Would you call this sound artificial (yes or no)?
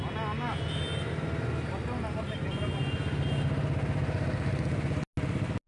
no